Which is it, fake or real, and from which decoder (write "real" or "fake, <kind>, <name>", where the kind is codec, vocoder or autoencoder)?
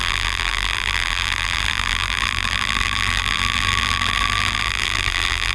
fake, vocoder, BigVGAN v2